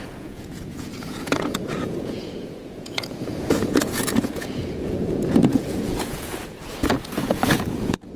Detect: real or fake fake